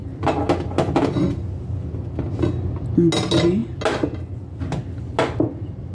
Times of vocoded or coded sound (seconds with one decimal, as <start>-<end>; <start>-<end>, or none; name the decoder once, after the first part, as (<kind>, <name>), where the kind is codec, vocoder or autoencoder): none